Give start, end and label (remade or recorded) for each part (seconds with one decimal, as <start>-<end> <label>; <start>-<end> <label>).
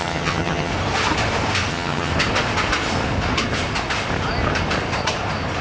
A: 0.0-0.7 remade; 0.7-1.7 recorded; 1.7-2.1 remade; 2.1-5.6 recorded